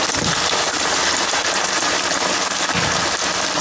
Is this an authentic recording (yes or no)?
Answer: no